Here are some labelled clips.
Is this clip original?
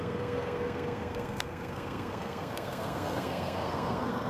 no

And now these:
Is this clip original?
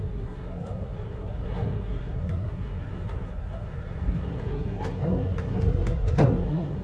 no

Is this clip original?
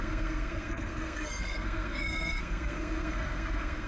no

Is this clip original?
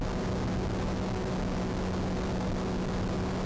yes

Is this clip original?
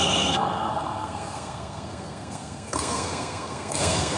no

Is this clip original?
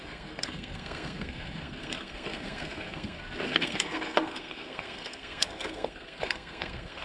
no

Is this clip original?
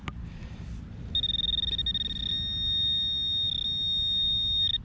yes